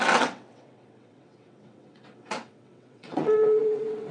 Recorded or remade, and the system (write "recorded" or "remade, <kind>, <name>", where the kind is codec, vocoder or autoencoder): remade, vocoder, WaveNeXt